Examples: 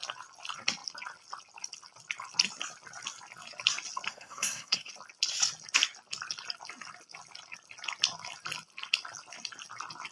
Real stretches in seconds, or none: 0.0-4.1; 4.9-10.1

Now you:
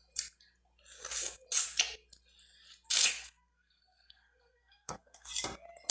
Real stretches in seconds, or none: 0.0-3.1; 5.3-5.9

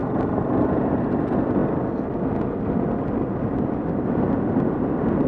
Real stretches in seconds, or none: 0.0-5.3

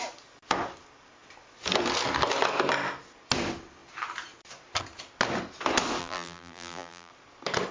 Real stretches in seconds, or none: 0.0-6.0; 7.1-7.7

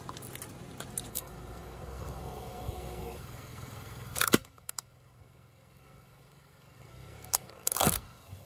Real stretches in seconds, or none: 0.0-1.1